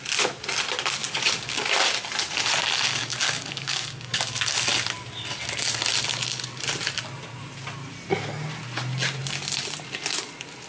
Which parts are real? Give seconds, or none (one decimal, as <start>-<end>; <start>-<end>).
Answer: 0.0-1.0; 1.7-2.9; 4.2-10.7